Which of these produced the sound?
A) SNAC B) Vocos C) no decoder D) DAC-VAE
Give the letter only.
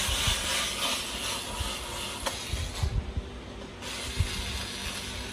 C